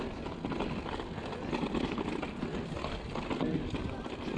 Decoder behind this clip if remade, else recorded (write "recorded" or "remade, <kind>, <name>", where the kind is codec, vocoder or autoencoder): recorded